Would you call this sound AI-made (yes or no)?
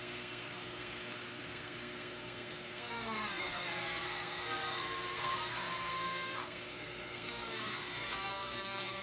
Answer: yes